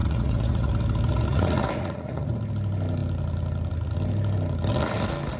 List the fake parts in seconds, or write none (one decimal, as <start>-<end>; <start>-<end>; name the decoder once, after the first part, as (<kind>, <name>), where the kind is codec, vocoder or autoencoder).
0.0-0.7 (vocoder, Vocos); 1.3-2.3